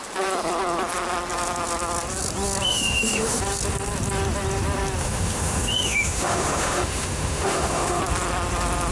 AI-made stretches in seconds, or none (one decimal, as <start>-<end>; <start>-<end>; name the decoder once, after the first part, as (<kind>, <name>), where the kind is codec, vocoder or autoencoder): 2.7-3.4 (autoencoder, DAC-VAE); 5.0-8.0